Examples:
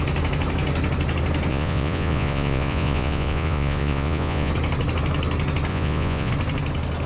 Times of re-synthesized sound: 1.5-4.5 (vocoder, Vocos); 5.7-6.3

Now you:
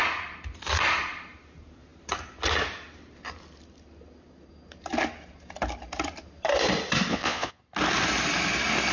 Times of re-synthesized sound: 7.1-7.6 (vocoder, Vocos)

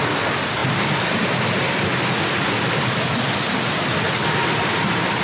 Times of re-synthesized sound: none

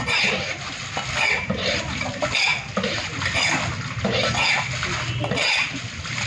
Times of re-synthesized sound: none

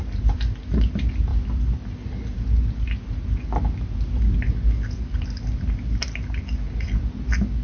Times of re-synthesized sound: none

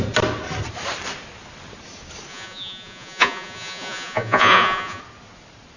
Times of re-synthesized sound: 2.3-5.0 (vocoder, Vocos)

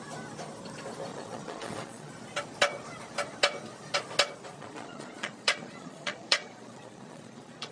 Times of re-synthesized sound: 1.1-2.1 (vocoder, Vocos); 4.5-7.7